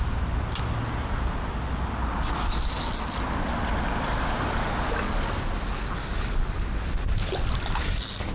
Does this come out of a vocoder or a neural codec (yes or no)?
no